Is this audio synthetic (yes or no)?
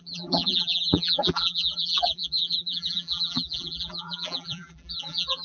yes